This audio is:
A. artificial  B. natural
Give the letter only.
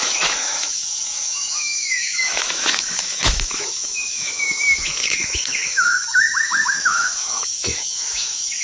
A